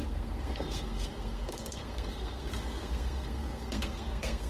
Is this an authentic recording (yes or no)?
no